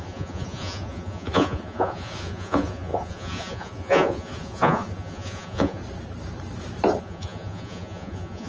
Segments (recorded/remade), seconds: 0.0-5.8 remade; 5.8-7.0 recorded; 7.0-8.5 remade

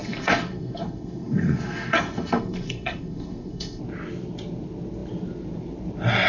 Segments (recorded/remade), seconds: 0.0-3.8 remade; 3.8-6.3 recorded